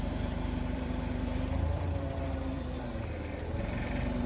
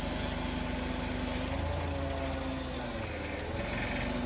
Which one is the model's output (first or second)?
first